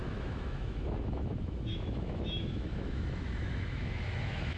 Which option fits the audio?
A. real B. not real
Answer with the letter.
B